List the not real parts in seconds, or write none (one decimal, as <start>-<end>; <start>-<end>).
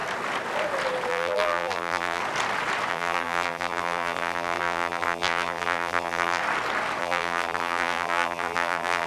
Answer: 1.1-2.2; 2.9-6.4; 7.0-9.1